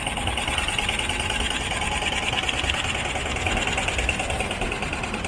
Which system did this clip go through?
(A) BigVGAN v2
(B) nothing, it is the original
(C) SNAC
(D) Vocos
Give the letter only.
B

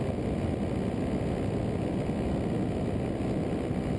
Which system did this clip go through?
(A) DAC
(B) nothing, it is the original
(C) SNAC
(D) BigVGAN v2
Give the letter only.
B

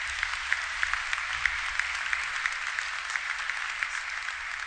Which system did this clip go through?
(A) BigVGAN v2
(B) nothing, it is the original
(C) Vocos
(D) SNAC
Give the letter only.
B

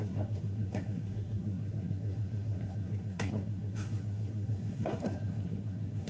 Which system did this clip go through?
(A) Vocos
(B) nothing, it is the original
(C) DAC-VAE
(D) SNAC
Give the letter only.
D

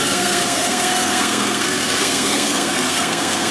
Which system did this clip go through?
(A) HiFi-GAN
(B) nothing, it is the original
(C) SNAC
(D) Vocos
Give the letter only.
C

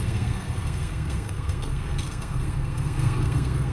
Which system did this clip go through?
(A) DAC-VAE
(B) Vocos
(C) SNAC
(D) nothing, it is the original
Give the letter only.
C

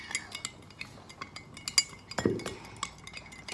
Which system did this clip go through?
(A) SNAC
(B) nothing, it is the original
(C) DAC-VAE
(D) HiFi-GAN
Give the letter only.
B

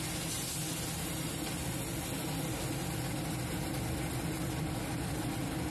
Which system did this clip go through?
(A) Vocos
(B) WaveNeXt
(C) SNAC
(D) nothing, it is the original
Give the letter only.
D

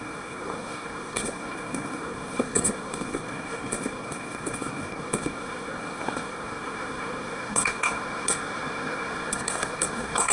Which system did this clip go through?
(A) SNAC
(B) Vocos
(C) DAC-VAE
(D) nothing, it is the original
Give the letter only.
A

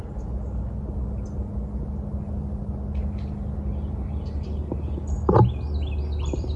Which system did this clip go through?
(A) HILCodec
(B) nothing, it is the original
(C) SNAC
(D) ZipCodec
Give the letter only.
B